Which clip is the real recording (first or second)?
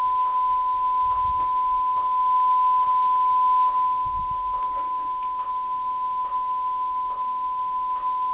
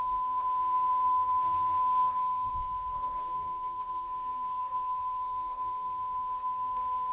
first